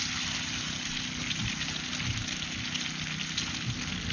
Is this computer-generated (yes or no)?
no